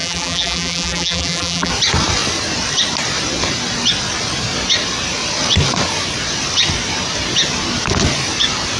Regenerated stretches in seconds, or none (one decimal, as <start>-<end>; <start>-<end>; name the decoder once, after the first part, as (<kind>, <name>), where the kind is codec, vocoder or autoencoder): 0.0-1.7 (vocoder, BigVGAN v2)